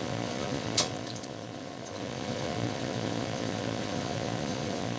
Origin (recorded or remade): remade